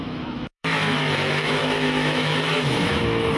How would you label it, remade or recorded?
remade